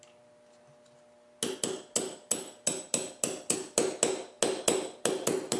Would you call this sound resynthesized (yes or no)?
no